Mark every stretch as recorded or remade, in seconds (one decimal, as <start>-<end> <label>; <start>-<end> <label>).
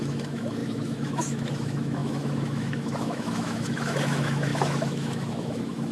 0.0-5.9 remade